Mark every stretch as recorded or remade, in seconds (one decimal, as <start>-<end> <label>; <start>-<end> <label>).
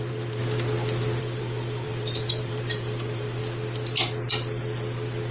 0.0-0.4 remade; 0.4-1.2 recorded; 1.2-3.4 remade; 3.4-5.3 recorded